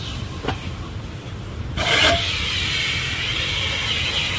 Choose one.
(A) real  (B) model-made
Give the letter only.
A